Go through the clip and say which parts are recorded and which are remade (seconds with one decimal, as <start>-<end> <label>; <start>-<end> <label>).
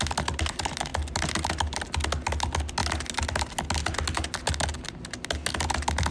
0.0-6.1 recorded